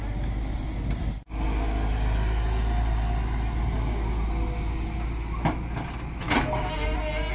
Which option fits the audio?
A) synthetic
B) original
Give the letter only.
B